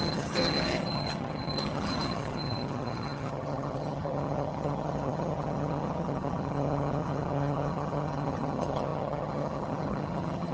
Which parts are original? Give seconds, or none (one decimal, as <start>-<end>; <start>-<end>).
none